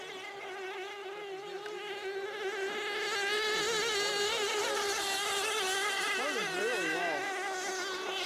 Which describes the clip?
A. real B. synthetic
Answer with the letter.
A